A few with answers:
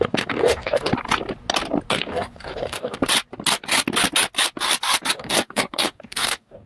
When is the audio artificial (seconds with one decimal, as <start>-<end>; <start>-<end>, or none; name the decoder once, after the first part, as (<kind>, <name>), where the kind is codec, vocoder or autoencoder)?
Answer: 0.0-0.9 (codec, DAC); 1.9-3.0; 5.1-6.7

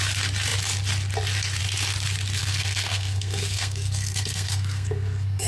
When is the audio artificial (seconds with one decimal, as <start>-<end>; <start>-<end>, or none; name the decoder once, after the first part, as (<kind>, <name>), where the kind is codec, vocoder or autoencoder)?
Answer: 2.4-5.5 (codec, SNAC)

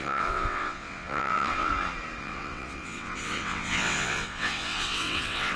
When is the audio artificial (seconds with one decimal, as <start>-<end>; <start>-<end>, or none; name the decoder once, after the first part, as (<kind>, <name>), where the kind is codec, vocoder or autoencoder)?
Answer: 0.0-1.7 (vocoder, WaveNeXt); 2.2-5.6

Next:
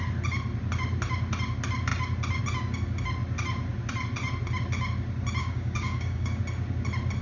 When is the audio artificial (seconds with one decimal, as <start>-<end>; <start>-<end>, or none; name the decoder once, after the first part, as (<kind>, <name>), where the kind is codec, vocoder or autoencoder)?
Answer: 5.4-6.4 (codec, DAC)

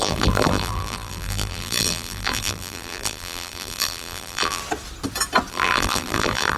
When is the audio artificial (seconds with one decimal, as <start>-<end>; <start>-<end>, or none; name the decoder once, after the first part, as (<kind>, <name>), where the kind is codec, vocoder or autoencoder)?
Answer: 0.0-4.6 (vocoder, BigVGAN v2); 5.5-6.6